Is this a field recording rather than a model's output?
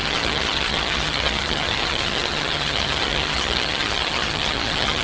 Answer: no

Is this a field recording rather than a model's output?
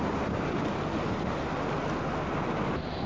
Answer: yes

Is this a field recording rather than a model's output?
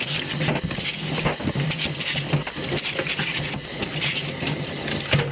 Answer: yes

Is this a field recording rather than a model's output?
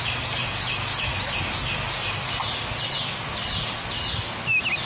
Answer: yes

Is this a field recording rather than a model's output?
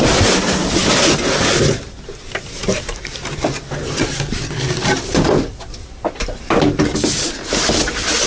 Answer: yes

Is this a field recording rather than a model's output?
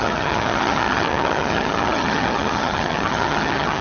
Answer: no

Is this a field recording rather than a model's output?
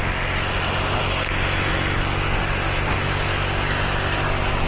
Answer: yes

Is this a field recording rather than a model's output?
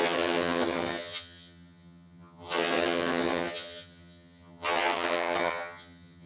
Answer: no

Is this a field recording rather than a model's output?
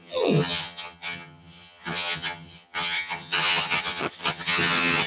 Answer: no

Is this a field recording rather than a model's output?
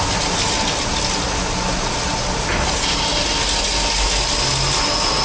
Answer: yes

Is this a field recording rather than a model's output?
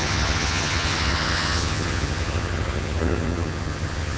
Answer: no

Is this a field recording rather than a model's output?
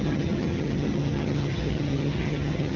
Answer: no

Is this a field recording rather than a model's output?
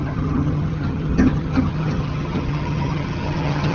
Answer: no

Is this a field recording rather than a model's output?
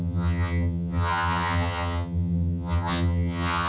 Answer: no